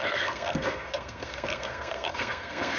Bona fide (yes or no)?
no